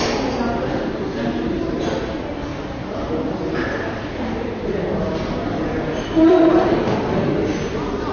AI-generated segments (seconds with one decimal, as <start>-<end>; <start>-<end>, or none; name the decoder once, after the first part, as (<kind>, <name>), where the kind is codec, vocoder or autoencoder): 2.5-7.0 (vocoder, BigVGAN v2)